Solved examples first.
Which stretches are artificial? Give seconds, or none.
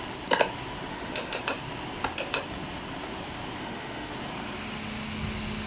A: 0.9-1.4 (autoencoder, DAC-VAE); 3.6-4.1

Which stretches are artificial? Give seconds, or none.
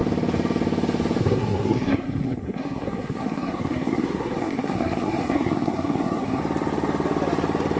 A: 1.2-6.4 (codec, SNAC)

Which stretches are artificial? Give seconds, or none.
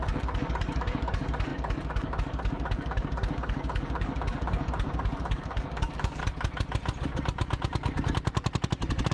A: 0.0-6.2 (codec, DAC)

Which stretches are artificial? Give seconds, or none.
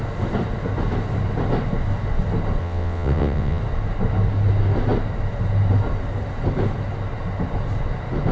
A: 2.6-3.6 (vocoder, WaveNeXt)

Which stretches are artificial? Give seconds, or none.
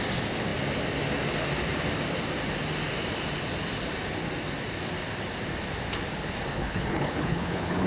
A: 6.5-7.9 (codec, HILCodec)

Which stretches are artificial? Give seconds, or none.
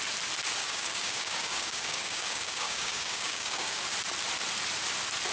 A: 0.6-3.8 (codec, DAC)